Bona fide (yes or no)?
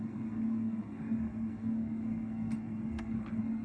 no